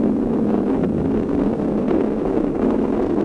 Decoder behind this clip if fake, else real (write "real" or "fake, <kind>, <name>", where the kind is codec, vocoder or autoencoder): fake, codec, SNAC